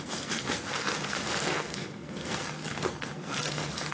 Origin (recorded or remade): remade